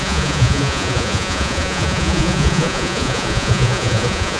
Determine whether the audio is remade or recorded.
remade